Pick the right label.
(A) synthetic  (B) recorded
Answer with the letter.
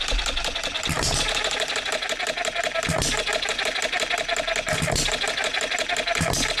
B